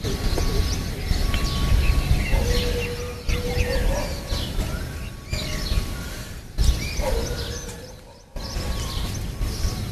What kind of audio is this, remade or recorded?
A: recorded